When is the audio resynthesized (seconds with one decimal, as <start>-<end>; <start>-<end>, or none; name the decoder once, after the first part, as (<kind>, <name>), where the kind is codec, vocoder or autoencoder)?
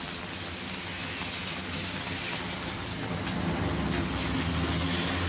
none